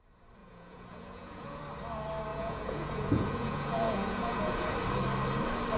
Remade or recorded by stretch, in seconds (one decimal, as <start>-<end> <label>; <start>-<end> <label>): 0.0-0.4 recorded; 0.4-1.6 remade; 1.6-2.3 recorded; 2.3-4.7 remade; 4.7-5.8 recorded